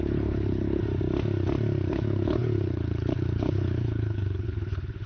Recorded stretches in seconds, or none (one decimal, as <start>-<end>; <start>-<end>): 0.8-1.9